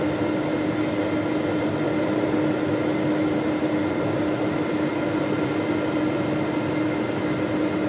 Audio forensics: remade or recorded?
recorded